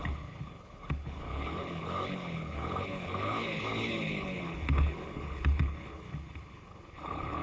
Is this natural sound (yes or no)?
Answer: no